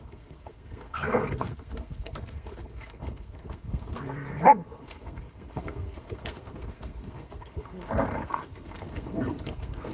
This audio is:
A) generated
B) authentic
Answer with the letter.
A